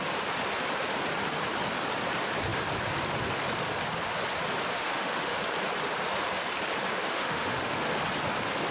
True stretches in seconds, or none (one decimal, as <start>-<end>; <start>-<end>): 0.0-4.7; 5.4-6.9; 8.0-8.7